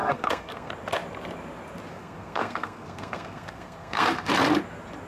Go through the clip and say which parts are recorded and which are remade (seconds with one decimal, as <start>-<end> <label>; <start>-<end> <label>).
0.0-0.7 remade; 0.7-1.9 recorded; 1.9-4.3 remade; 4.3-5.1 recorded